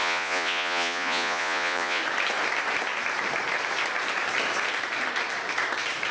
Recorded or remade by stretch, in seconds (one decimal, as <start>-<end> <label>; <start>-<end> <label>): 0.0-2.0 remade; 2.0-6.1 recorded